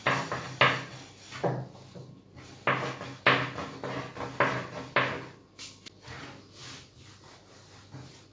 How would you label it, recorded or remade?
recorded